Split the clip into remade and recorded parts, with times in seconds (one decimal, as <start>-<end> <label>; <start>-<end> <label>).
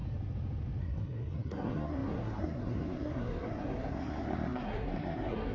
0.0-0.8 recorded; 0.8-5.5 remade